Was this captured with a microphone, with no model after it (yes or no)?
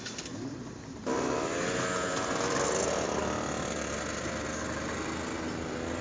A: yes